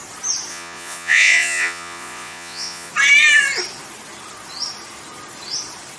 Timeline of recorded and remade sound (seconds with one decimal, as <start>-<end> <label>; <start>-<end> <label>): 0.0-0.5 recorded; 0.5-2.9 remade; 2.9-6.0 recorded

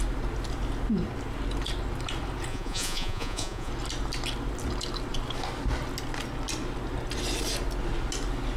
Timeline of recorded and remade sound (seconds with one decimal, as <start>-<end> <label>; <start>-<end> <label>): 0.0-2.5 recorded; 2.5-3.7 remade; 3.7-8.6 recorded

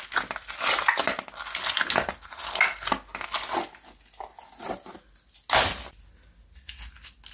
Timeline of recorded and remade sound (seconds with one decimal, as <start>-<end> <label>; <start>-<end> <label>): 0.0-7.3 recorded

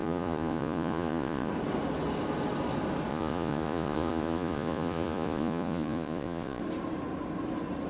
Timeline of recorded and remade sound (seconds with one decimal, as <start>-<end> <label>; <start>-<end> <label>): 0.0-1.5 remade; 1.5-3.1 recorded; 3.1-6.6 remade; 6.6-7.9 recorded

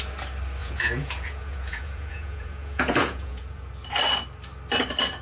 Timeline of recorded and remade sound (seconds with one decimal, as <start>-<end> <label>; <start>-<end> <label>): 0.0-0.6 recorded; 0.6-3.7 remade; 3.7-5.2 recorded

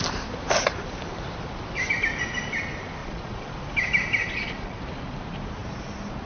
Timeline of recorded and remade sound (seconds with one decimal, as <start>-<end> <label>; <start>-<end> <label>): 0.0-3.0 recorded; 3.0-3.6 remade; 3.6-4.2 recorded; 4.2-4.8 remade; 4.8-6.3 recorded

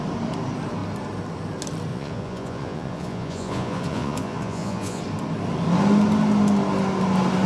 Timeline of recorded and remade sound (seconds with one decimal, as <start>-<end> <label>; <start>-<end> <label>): 0.0-1.9 recorded; 1.9-5.0 remade; 5.0-7.5 recorded